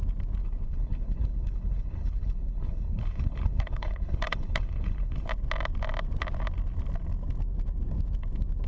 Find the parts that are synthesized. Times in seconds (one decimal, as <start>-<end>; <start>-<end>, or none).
0.4-5.3